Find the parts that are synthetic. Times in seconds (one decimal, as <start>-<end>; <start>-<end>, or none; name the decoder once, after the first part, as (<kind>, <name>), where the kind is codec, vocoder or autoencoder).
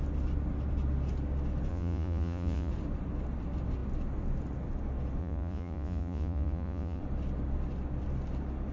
1.7-2.7 (vocoder, Vocos); 5.2-7.0